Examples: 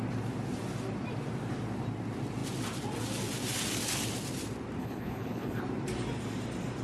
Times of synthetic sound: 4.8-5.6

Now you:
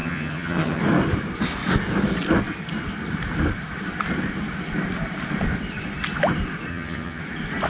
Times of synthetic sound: 0.0-0.8; 6.7-7.2

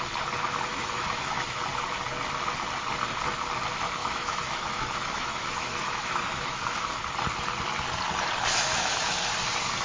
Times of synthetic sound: 0.7-1.6; 4.0-6.9; 8.7-9.2